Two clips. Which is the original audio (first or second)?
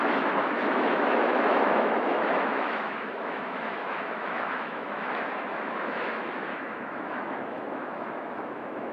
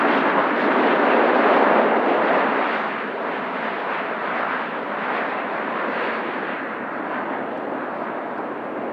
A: second